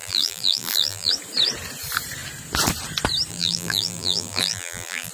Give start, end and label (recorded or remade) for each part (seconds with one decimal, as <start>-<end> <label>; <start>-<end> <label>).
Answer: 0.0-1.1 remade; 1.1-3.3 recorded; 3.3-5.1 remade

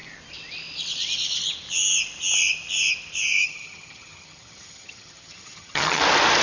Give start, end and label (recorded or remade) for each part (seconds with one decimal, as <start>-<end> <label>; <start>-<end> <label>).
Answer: 0.0-3.4 recorded; 3.4-6.0 remade; 6.0-6.4 recorded

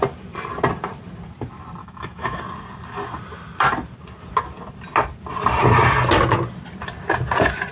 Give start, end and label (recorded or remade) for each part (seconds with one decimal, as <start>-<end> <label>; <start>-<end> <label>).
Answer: 0.0-1.8 recorded; 1.8-2.4 remade; 2.4-7.7 recorded

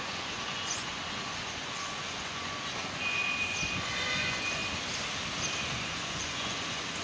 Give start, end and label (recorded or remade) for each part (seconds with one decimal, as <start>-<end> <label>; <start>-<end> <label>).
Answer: 0.0-4.6 remade; 4.6-5.6 recorded; 5.6-7.0 remade

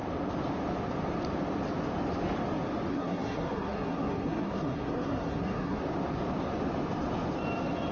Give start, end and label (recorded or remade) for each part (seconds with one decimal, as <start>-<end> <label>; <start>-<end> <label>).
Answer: 0.0-2.9 recorded; 2.9-5.8 remade; 5.8-7.9 recorded

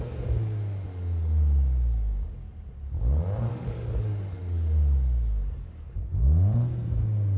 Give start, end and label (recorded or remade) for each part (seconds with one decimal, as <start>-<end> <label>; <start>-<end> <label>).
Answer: 0.0-3.5 recorded; 3.5-6.1 remade; 6.1-7.4 recorded

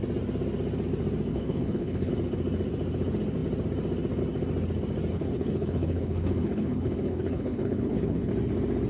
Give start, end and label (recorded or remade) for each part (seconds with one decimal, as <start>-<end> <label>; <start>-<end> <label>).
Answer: 0.0-1.3 recorded; 1.3-2.1 remade; 2.1-5.1 recorded; 5.1-8.3 remade; 8.3-8.9 recorded

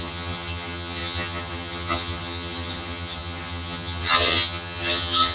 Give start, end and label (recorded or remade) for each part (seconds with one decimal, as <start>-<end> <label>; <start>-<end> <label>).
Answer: 0.0-5.3 remade